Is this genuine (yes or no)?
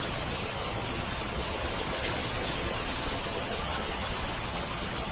no